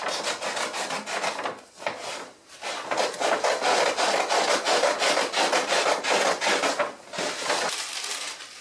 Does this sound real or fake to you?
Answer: real